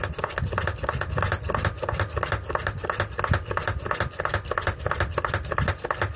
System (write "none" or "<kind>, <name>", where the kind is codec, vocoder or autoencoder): none